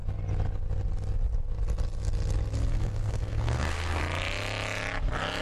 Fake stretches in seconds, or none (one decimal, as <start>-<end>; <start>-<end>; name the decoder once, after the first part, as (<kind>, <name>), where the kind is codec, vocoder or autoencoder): 2.7-4.0 (codec, SNAC)